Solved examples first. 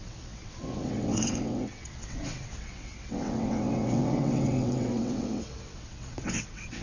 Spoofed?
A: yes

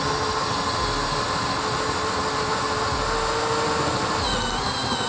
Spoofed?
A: no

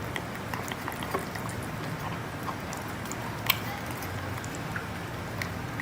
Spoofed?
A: no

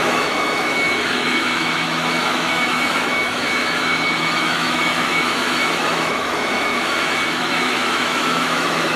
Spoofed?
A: yes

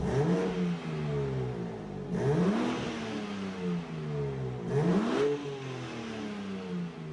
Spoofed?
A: no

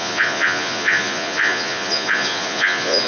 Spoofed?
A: yes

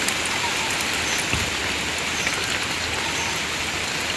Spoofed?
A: no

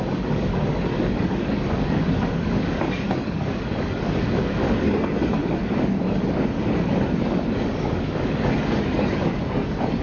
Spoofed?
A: yes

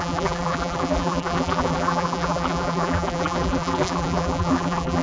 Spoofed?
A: yes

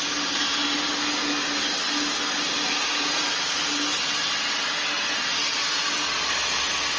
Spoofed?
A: no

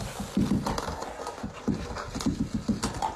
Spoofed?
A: no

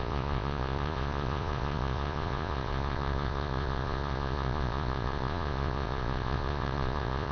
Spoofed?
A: yes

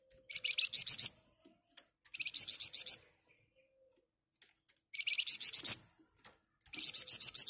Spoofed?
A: no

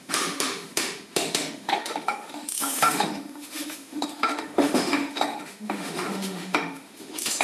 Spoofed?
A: yes